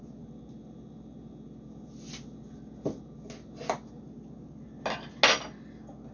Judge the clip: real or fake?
real